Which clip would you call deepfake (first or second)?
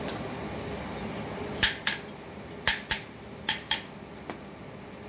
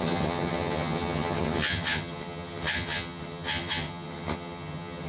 second